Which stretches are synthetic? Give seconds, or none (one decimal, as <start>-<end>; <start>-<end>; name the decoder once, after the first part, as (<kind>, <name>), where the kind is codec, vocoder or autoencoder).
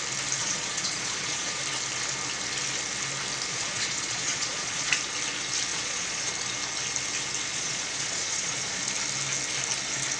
0.4-1.6 (vocoder, Vocos); 3.5-4.9; 5.7-6.3; 7.5-8.8